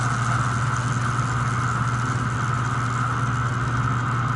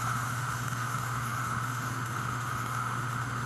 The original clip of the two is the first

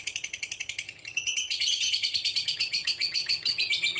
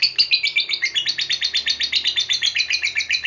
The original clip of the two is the second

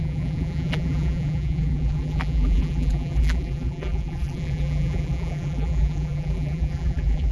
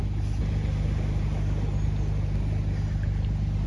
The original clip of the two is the second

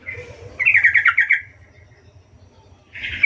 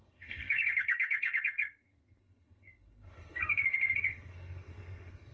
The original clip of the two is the first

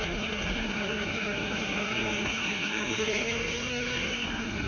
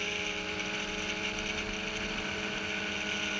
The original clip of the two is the second